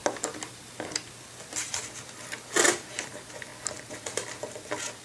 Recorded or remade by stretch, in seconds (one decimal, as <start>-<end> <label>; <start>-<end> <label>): 0.0-5.0 recorded

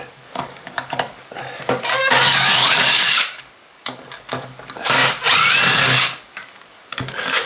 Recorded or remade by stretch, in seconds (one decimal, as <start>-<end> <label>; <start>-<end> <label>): 0.0-5.0 remade; 5.0-5.7 recorded; 5.7-7.5 remade